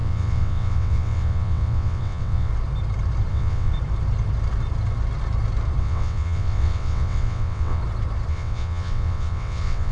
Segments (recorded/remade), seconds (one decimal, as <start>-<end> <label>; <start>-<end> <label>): 0.0-2.5 remade; 2.5-3.3 recorded; 3.3-3.7 remade; 3.7-5.8 recorded; 5.8-7.8 remade; 7.8-8.3 recorded; 8.3-9.9 remade